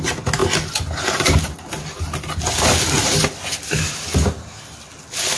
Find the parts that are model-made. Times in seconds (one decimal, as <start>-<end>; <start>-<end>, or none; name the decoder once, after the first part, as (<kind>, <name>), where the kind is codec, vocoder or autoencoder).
none